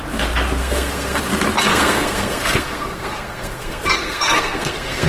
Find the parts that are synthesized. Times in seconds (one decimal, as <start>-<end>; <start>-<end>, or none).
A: 0.6-1.2; 1.7-5.1